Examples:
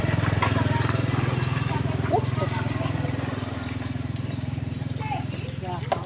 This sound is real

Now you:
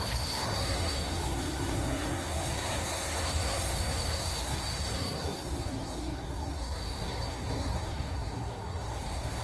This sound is fake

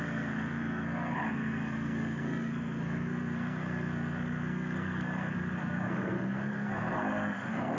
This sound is fake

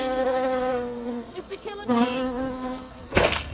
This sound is fake